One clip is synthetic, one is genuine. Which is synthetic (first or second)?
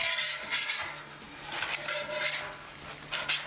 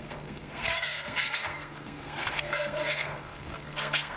second